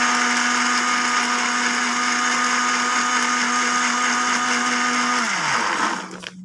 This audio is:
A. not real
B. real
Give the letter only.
B